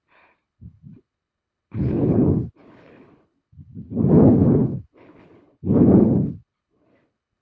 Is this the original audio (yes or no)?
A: no